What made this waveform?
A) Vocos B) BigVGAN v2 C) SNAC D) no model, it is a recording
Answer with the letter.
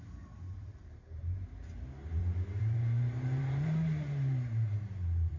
B